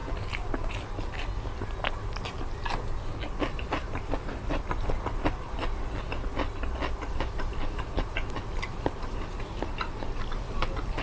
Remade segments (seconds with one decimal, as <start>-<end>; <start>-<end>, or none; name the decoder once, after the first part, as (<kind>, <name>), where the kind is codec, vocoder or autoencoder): none